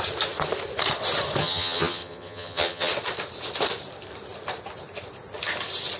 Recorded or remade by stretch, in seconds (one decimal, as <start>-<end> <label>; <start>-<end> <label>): 0.0-1.4 recorded; 1.4-2.9 remade; 2.9-6.0 recorded